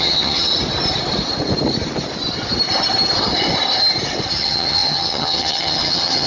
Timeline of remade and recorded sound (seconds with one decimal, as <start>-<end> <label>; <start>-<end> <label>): 0.0-0.5 remade; 0.5-4.3 recorded; 4.3-6.3 remade